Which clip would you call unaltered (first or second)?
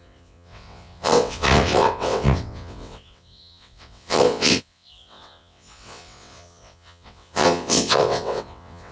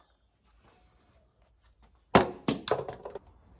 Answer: second